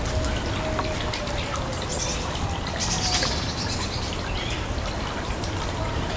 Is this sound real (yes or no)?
yes